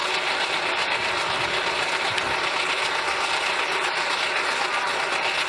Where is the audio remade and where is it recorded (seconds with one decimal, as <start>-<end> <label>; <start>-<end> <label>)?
0.0-5.5 recorded